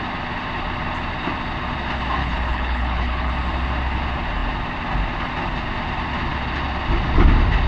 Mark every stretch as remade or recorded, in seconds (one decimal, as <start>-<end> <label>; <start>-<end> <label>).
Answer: 0.0-2.2 recorded; 2.2-3.3 remade; 3.3-7.7 recorded